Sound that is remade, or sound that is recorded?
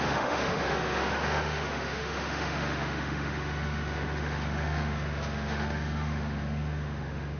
remade